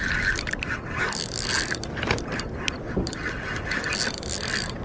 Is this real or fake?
real